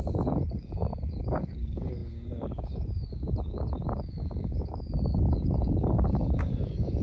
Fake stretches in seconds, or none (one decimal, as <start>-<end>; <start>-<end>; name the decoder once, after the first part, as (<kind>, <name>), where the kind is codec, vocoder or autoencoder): 0.0-7.0 (codec, DAC)